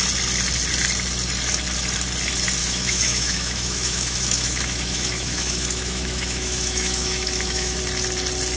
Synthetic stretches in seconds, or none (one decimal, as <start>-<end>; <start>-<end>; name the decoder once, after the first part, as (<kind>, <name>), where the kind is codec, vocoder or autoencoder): 2.6-7.8 (autoencoder, DAC-VAE)